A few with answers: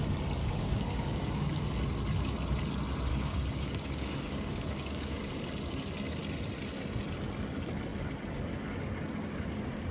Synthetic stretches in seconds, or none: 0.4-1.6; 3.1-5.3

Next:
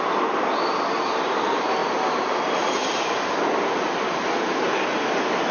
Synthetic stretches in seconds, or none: none

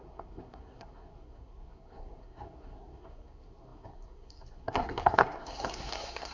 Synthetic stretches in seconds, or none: 0.0-6.3